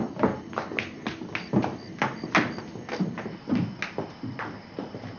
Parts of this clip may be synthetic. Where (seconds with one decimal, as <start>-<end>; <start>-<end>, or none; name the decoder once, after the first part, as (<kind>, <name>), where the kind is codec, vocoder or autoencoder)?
none